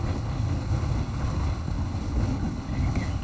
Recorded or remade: remade